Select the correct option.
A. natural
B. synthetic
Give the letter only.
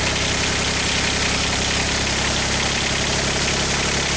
A